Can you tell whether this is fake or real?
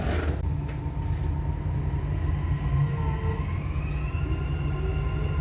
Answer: real